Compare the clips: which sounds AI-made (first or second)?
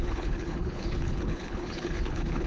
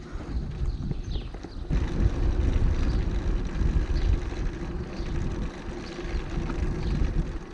first